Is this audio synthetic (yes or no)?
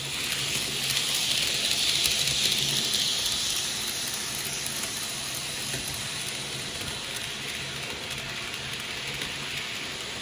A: no